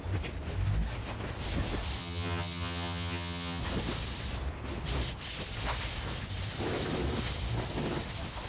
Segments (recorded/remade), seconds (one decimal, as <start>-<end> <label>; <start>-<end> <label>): 0.0-2.0 recorded; 2.0-3.6 remade; 3.6-8.5 recorded